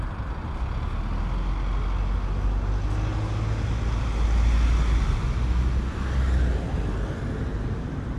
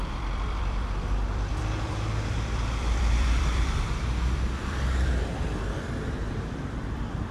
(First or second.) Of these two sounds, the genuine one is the first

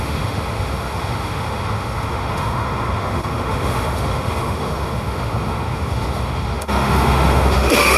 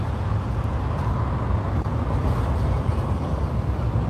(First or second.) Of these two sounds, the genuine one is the second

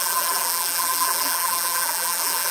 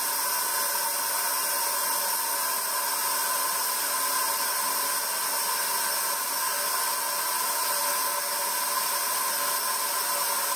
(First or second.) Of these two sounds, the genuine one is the second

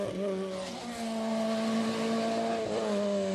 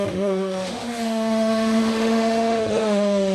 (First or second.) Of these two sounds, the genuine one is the first